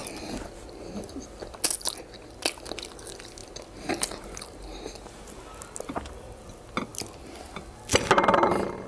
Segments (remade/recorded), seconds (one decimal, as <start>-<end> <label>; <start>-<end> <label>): 0.0-8.9 recorded

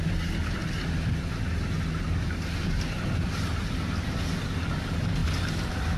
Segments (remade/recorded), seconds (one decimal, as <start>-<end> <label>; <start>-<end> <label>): 0.0-5.2 recorded; 5.2-6.0 remade

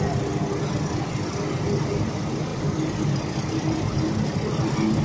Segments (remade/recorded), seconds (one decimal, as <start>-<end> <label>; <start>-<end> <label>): 0.0-5.0 recorded